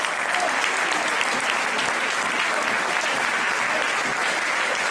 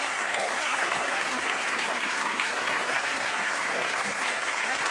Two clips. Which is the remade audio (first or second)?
second